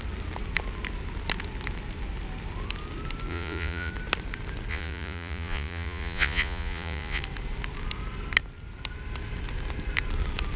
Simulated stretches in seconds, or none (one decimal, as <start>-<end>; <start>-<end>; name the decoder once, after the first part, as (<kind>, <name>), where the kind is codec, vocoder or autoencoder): 3.3-3.9 (vocoder, Vocos); 4.7-7.2